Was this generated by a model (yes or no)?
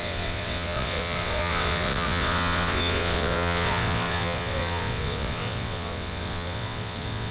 yes